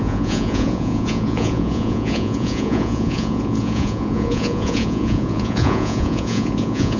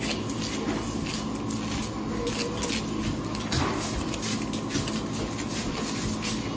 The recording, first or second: second